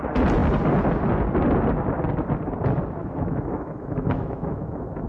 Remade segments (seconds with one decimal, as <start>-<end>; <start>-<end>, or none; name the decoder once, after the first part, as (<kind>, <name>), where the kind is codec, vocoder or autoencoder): 3.0-5.1 (autoencoder, DAC-VAE)